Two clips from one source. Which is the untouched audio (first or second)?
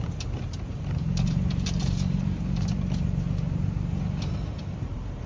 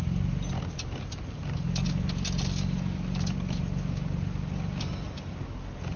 second